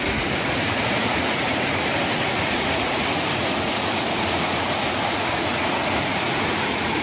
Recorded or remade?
remade